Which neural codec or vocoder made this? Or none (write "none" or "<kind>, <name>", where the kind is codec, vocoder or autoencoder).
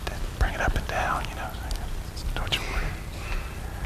none